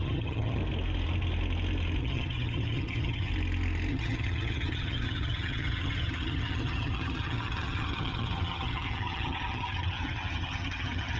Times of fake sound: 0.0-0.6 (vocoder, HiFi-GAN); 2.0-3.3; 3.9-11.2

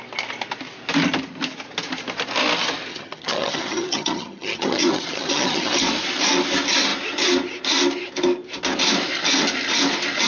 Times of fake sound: 2.9-5.7 (vocoder, HiFi-GAN)

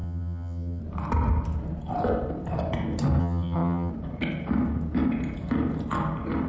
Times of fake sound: 0.0-0.8 (vocoder, HiFi-GAN); 3.2-3.9

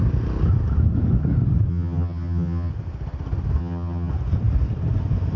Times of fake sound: 1.7-2.7 (vocoder, HiFi-GAN); 3.6-4.1

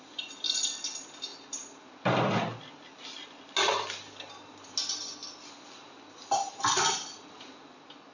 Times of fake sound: none

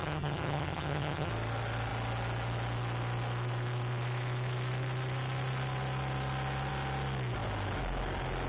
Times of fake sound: 0.0-1.3 (vocoder, HiFi-GAN)

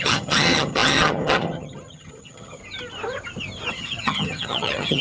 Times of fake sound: 0.0-2.6 (vocoder, HiFi-GAN); 3.7-5.0